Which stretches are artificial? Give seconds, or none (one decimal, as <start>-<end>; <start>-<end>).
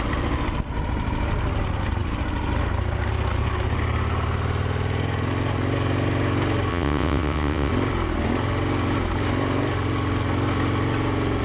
6.7-7.7